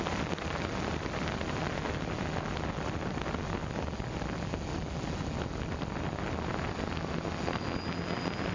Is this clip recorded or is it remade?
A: recorded